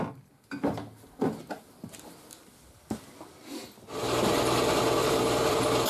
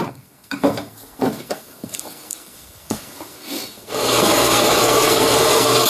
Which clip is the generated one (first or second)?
second